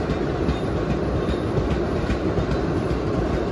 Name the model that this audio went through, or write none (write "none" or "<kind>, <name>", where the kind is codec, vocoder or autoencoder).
none